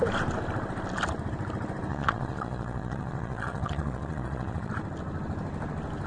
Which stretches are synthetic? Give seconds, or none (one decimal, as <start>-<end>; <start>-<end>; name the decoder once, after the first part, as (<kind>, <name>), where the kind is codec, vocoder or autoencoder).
1.9-4.7 (vocoder, Vocos)